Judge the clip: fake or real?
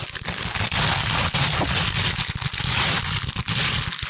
real